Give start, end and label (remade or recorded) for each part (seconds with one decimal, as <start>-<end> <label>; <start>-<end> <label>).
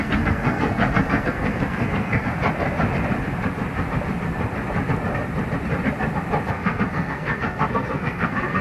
0.0-2.3 remade; 2.3-6.5 recorded; 6.5-8.6 remade